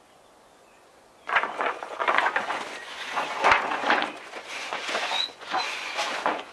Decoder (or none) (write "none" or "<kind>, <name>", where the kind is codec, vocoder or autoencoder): vocoder, Vocos